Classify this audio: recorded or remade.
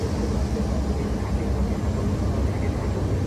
recorded